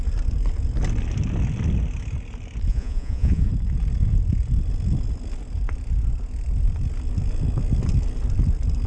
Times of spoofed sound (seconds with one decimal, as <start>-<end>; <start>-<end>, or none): 2.7-3.5